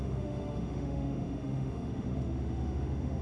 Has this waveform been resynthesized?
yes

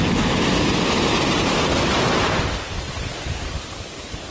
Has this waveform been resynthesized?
no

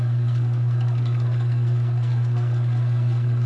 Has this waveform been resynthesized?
yes